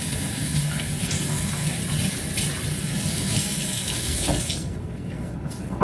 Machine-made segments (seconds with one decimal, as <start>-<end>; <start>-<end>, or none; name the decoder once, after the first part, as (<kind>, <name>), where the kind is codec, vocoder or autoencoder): 0.0-1.8 (codec, SNAC); 2.8-5.8